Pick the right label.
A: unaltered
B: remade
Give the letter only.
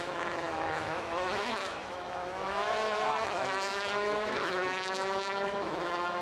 B